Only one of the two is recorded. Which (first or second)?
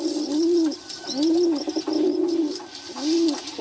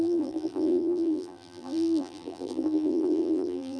first